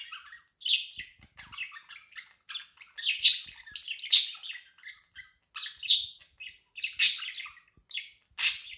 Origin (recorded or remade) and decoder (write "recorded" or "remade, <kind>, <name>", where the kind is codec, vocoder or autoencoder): recorded